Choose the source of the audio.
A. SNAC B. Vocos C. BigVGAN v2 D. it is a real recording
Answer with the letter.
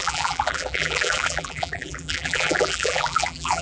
C